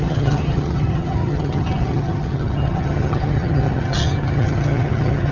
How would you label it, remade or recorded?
remade